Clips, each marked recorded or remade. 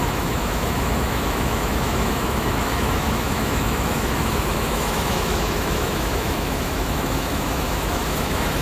remade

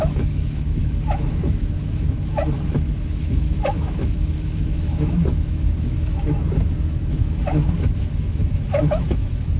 remade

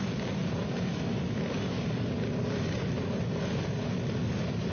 recorded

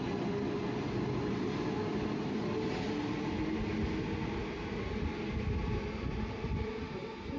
recorded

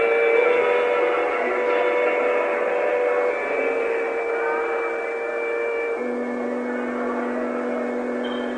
recorded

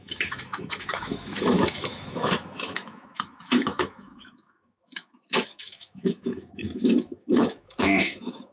remade